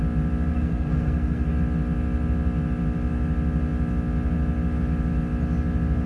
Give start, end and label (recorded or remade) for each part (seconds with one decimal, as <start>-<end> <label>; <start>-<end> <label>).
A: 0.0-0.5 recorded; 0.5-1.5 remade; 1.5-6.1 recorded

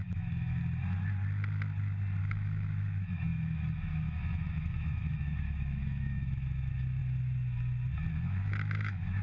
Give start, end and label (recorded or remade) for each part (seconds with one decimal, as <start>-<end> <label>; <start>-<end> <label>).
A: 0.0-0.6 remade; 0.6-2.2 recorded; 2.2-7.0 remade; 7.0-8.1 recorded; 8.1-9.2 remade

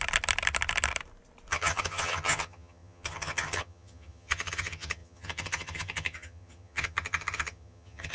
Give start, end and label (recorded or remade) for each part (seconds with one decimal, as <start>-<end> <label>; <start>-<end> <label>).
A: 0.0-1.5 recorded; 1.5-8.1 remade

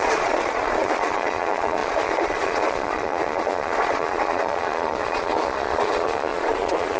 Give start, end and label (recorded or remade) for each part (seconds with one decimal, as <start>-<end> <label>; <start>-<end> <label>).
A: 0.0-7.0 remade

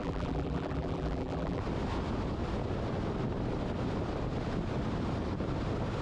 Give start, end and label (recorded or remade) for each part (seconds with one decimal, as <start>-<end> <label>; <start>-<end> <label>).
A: 0.0-1.6 remade; 1.6-6.0 recorded

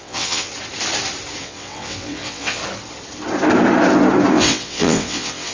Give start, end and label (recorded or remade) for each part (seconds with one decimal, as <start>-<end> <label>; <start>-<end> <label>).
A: 0.0-0.5 remade; 0.5-1.4 recorded; 1.4-2.6 remade; 2.6-4.3 recorded; 4.3-5.5 remade

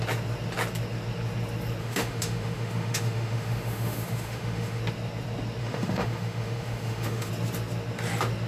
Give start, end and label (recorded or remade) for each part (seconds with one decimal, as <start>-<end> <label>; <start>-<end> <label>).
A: 0.0-1.8 recorded; 1.8-4.8 remade; 4.8-5.6 recorded; 5.6-7.3 remade; 7.3-8.5 recorded